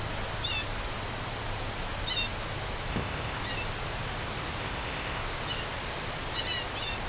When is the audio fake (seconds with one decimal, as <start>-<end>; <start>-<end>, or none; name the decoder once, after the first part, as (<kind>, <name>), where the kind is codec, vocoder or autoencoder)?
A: 2.9-3.4 (codec, ZipCodec); 4.6-5.2